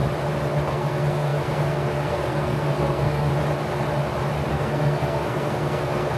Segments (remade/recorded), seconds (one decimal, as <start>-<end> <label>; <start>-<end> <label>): 0.0-0.7 recorded; 0.7-3.3 remade; 3.3-4.5 recorded; 4.5-6.2 remade